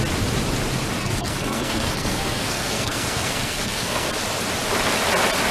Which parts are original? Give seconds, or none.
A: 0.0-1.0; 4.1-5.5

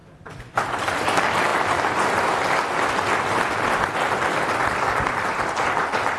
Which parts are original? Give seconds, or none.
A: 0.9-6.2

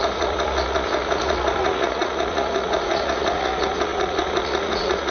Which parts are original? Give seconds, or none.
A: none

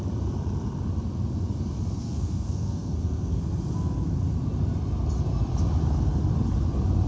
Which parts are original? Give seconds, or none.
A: 0.0-2.0; 3.4-7.1

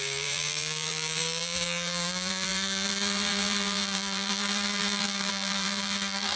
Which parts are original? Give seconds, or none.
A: none

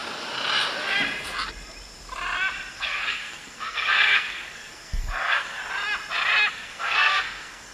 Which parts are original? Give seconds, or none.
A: 0.0-2.7; 5.6-6.5

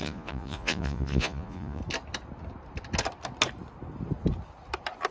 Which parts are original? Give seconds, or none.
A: 1.8-5.1

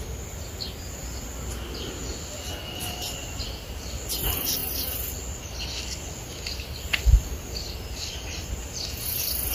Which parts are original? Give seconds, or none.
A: 0.0-9.5